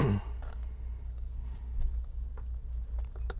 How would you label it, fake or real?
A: real